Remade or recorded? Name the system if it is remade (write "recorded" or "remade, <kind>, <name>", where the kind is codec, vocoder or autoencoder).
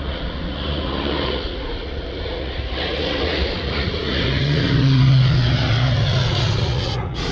remade, vocoder, Vocos